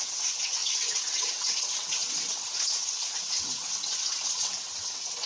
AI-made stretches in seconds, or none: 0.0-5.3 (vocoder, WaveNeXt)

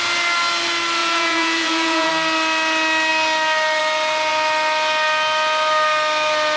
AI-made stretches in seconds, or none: 1.0-2.1 (vocoder, Vocos)

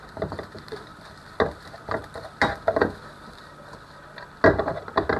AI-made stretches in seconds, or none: 0.0-0.9 (vocoder, BigVGAN v2); 1.6-2.0

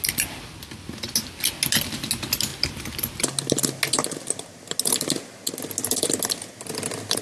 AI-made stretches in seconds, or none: none

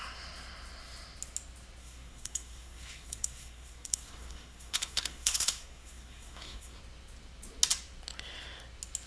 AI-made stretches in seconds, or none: 1.8-6.8 (codec, SNAC)